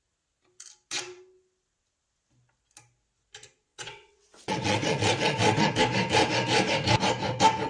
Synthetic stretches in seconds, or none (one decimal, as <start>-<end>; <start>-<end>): 3.7-5.7